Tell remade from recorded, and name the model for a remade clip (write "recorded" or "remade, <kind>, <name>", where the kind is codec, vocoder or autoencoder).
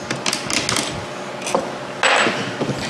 recorded